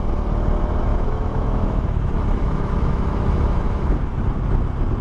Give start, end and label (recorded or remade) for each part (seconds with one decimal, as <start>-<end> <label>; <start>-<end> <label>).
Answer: 0.0-0.9 recorded; 0.9-3.9 remade; 3.9-5.0 recorded